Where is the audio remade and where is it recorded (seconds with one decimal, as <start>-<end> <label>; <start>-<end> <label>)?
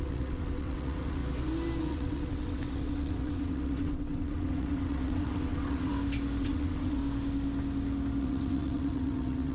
0.0-1.2 remade; 1.2-1.8 recorded; 1.8-5.9 remade; 5.9-6.4 recorded; 6.4-7.0 remade; 7.0-8.2 recorded; 8.2-9.5 remade